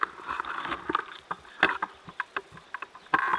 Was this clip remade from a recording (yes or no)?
no